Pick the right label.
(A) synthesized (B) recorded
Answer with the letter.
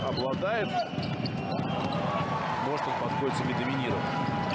B